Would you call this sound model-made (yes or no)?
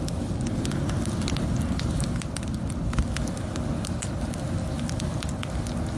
no